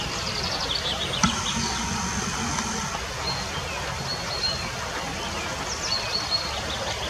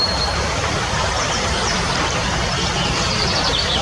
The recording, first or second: first